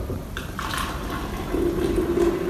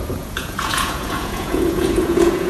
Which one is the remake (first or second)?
second